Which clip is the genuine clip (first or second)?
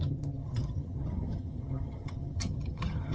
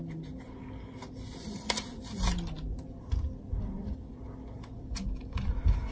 second